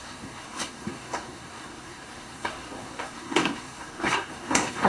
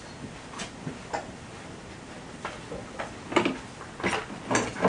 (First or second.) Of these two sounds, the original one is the second